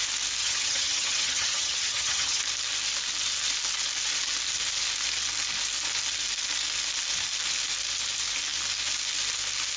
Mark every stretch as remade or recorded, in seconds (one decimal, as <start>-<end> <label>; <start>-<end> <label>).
0.0-0.4 recorded; 0.4-2.4 remade; 2.4-9.8 recorded